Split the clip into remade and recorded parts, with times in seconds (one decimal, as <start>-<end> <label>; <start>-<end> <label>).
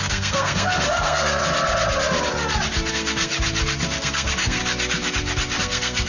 0.0-1.4 remade; 1.4-2.9 recorded; 2.9-3.3 remade; 3.3-4.0 recorded; 4.0-4.6 remade; 4.6-5.6 recorded; 5.6-6.1 remade